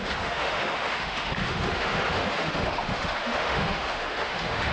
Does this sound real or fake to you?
fake